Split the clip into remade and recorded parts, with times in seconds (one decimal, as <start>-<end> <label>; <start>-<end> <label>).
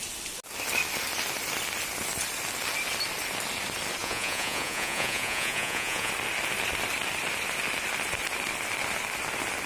0.0-4.0 recorded; 4.0-6.1 remade; 6.1-9.7 recorded